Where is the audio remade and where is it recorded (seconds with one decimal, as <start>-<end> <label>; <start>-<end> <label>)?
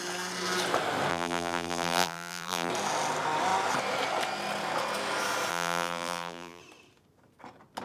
0.0-1.1 recorded; 1.1-2.7 remade; 2.7-5.5 recorded; 5.5-6.6 remade; 6.6-7.8 recorded